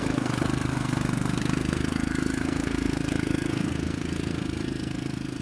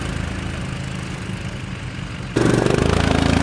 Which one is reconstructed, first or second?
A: first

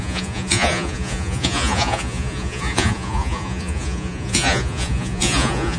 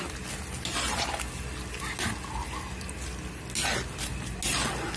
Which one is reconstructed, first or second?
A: first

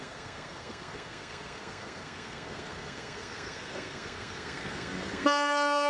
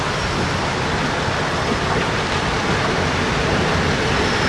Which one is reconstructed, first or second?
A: first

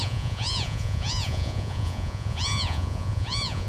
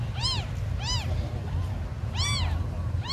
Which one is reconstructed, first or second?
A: first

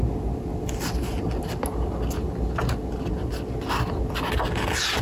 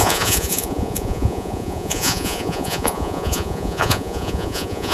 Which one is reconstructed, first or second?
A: second